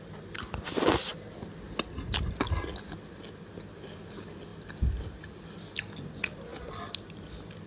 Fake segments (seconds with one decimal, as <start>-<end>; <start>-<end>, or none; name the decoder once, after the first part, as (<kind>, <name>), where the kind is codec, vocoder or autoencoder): none